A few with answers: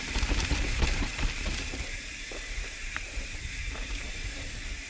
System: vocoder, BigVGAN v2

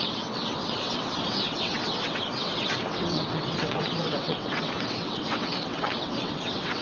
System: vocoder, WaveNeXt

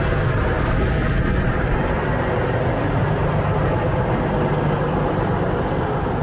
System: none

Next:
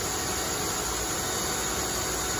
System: none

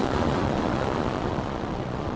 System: vocoder, Vocos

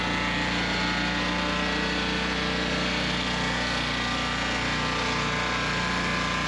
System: none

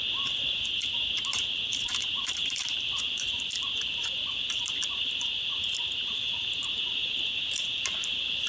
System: vocoder, BigVGAN v2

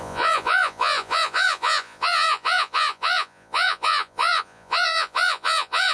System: vocoder, Vocos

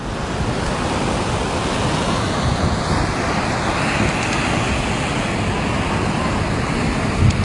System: none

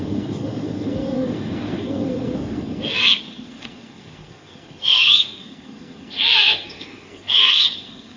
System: codec, SNAC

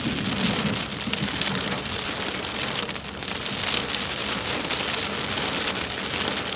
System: none